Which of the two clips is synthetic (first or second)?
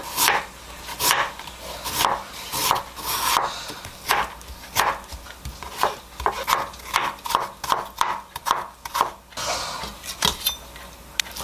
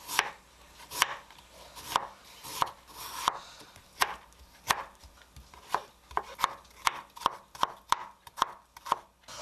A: second